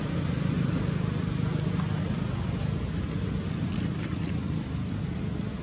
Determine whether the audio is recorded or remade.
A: recorded